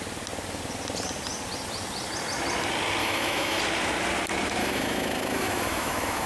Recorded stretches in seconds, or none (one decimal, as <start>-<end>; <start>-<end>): 0.0-3.0; 3.6-4.6